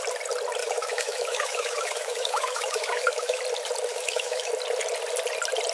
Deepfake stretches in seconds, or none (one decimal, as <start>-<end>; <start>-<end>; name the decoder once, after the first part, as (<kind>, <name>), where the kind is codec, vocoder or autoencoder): 0.6-3.4 (autoencoder, DAC-VAE); 3.9-4.5